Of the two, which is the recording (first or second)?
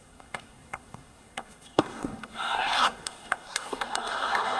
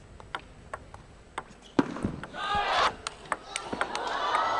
second